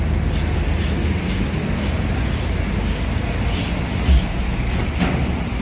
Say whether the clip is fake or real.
real